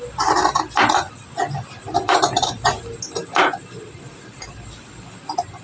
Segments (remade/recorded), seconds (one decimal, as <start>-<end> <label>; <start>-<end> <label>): 0.0-5.6 recorded